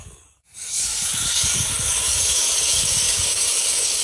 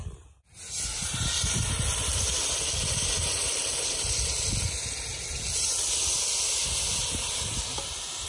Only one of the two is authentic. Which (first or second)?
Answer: second